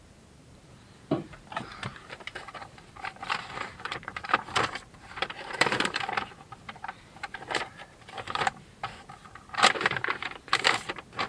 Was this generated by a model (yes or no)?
yes